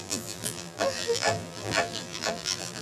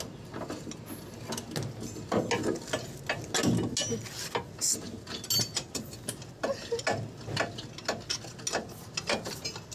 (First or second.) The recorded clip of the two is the second